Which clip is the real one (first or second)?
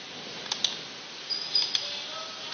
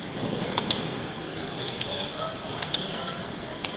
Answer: first